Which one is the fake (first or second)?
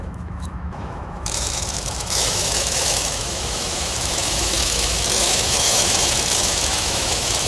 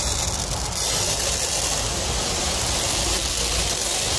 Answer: first